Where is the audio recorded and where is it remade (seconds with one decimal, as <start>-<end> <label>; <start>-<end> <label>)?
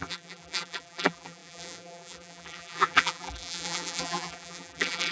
0.0-5.1 remade